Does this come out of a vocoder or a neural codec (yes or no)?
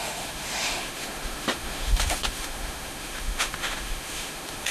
yes